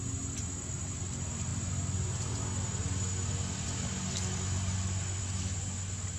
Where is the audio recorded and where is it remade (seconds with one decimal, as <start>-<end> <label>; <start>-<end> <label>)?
0.0-6.2 recorded